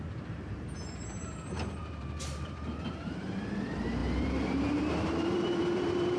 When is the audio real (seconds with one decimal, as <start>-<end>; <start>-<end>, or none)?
none